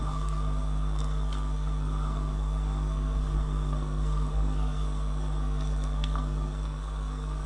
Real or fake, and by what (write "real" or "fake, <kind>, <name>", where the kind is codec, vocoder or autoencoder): fake, codec, SNAC